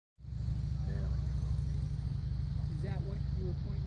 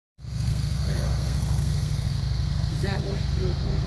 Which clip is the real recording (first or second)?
first